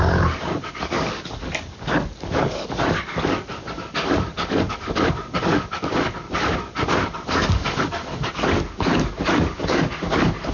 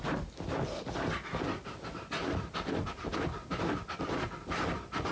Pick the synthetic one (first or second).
first